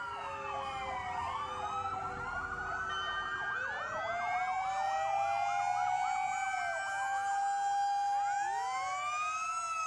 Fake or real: real